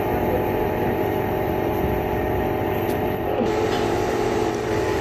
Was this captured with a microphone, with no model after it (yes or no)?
no